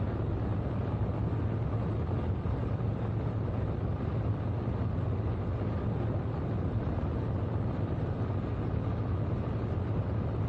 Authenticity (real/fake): real